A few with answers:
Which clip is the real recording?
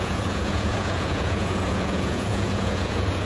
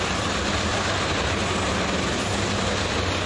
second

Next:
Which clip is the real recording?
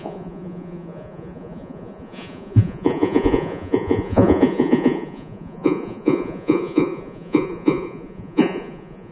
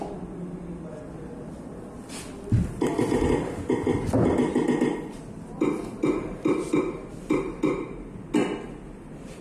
second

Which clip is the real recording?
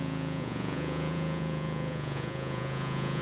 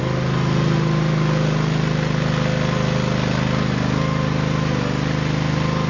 second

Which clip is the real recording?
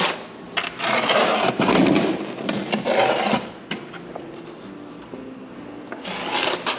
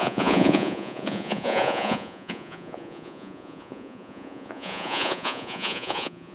first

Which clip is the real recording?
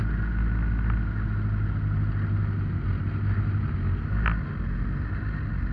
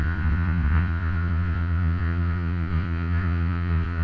first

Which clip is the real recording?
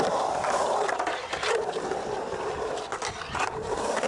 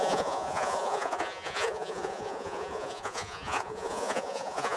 first